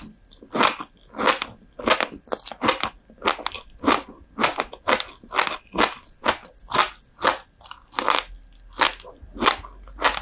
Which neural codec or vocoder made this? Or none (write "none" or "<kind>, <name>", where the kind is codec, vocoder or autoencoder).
none